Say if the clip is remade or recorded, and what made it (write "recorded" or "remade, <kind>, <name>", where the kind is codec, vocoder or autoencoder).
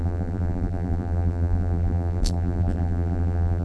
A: remade, vocoder, BigVGAN v2